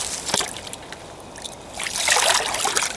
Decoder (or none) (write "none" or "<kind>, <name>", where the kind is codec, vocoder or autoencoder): none